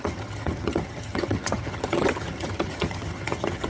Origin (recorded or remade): remade